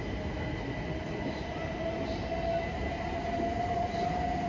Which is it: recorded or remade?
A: recorded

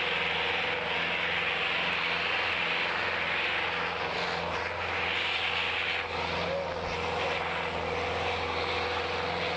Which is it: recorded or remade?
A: recorded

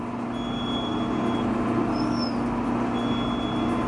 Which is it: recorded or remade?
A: recorded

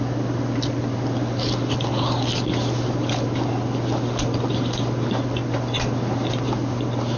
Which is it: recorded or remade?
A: remade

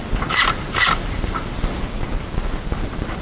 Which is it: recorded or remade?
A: remade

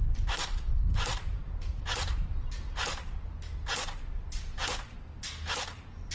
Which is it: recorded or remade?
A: recorded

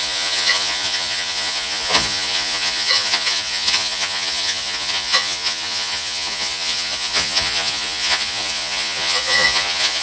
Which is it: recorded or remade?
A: remade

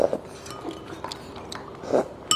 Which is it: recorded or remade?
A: recorded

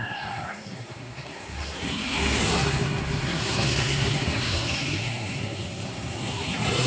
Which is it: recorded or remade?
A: remade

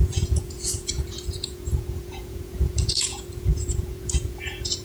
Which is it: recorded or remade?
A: remade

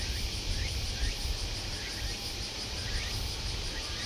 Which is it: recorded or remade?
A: recorded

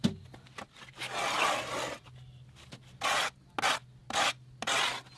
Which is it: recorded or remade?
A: recorded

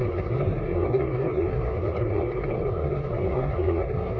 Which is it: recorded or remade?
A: remade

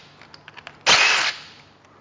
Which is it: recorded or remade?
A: recorded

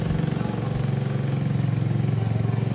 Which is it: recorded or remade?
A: recorded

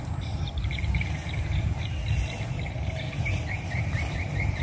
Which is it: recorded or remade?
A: remade